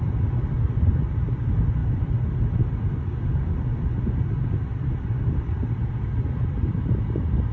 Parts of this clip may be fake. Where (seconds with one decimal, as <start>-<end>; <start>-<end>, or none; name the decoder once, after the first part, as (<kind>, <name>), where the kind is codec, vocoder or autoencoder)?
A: none